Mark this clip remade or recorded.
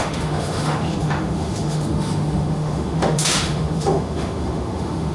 remade